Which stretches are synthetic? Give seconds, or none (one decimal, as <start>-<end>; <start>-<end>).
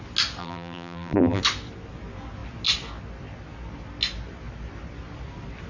0.4-1.4